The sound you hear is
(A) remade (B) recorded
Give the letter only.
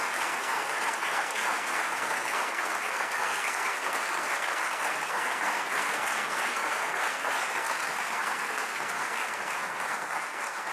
A